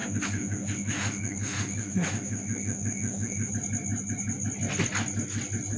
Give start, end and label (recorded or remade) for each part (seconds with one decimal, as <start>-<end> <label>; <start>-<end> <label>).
0.0-3.5 remade; 3.5-5.8 recorded

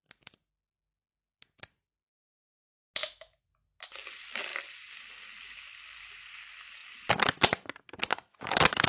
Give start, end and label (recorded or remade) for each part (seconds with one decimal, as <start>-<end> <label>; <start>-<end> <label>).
0.0-3.0 recorded; 3.0-3.5 remade; 3.5-8.9 recorded

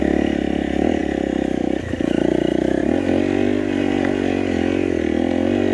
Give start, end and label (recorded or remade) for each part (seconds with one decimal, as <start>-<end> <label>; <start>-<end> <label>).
0.0-5.7 recorded